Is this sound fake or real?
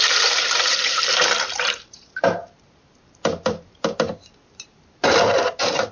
fake